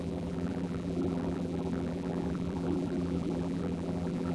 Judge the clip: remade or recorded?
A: remade